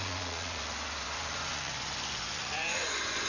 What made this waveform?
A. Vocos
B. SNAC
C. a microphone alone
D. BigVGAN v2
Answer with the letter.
A